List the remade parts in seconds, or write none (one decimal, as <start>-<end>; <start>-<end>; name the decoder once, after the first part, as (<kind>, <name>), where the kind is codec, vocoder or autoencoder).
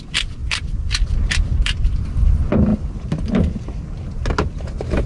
none